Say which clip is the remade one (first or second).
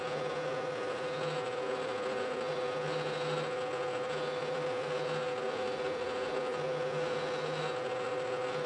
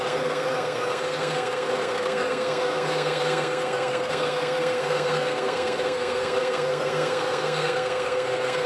second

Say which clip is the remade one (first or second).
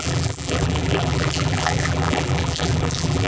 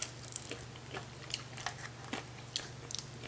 first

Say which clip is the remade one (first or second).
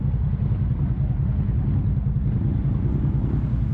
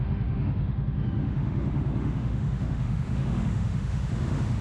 second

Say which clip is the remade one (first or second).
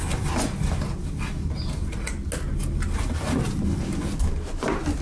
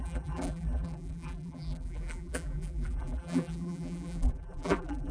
second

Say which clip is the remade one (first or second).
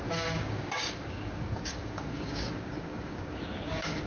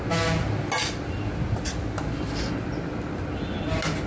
first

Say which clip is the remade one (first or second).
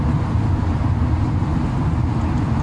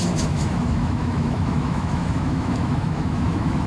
second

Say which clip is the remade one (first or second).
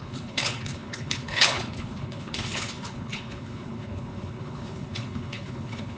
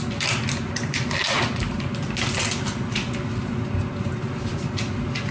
first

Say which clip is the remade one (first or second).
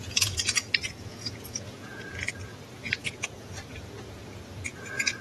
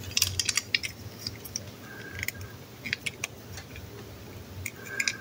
first